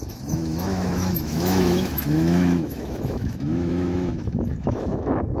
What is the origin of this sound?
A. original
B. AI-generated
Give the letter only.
B